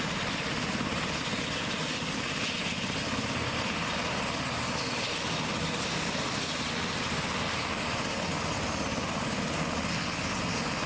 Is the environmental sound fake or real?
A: real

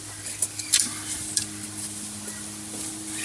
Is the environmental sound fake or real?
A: fake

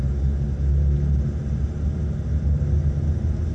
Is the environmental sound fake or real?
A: real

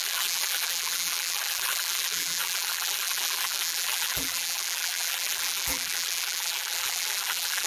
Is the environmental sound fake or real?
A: fake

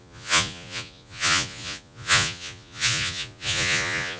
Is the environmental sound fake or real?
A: fake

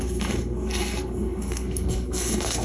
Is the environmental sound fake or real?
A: fake